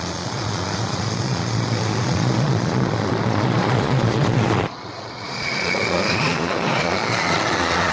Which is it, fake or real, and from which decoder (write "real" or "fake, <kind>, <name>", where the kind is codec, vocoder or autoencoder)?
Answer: fake, vocoder, Vocos